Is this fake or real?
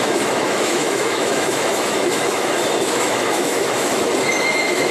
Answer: fake